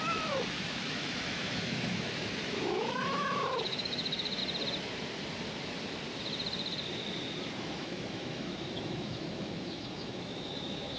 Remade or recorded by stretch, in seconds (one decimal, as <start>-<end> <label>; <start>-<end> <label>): 0.0-4.4 remade; 4.4-7.6 recorded; 7.6-11.0 remade